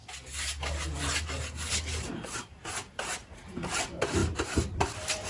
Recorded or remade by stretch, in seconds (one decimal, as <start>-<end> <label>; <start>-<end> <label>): 0.0-2.1 recorded; 2.1-5.3 remade